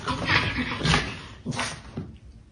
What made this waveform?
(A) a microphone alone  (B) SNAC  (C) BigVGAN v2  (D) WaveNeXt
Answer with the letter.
A